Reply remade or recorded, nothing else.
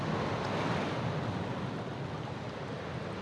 recorded